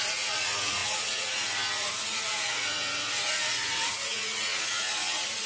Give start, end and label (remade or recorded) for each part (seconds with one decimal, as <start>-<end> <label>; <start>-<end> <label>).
0.0-5.5 remade